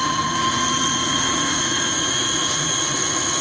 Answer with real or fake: fake